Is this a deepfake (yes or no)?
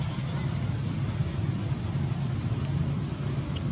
no